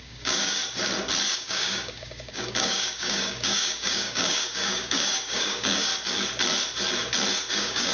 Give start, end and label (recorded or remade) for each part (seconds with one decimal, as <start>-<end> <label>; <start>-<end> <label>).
0.0-0.6 remade; 0.6-1.3 recorded; 1.3-5.9 remade; 5.9-7.5 recorded; 7.5-7.9 remade